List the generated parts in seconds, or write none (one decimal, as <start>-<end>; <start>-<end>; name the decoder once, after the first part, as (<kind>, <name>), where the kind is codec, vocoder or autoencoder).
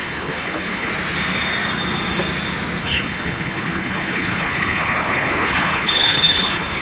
0.0-0.9 (codec, HILCodec); 2.8-6.8